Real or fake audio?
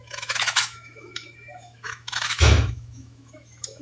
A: fake